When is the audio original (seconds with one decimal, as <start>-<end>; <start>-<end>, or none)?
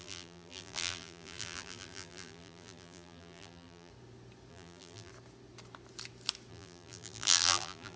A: 3.9-4.5; 5.1-6.5